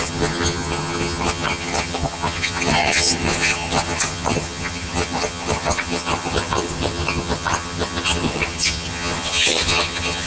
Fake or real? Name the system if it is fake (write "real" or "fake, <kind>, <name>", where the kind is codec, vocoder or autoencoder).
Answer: fake, vocoder, HiFi-GAN